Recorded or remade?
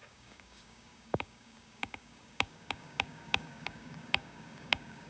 remade